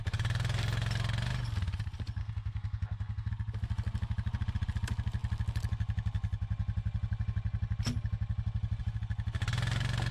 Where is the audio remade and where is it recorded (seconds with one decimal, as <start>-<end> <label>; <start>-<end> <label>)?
0.0-2.2 recorded; 2.2-3.3 remade; 3.3-10.1 recorded